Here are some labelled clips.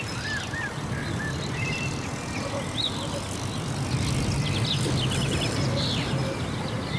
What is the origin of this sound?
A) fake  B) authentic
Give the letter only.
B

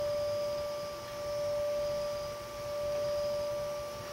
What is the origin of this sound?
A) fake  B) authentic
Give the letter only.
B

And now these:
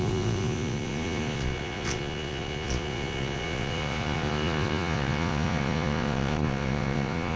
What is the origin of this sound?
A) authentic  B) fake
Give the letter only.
B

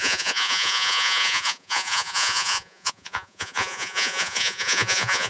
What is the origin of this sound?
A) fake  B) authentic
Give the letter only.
A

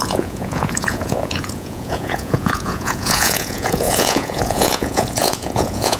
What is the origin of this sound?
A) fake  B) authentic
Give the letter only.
A